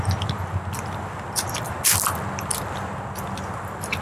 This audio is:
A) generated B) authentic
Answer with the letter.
B